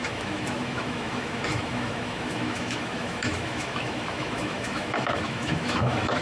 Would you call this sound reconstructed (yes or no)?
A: yes